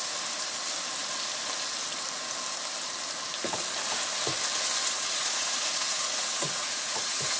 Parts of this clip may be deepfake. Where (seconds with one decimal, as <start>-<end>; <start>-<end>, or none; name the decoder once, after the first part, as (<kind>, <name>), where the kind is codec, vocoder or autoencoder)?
4.8-7.4 (vocoder, Vocos)